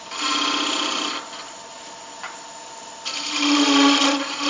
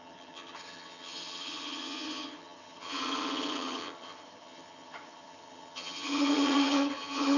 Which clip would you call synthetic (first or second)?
second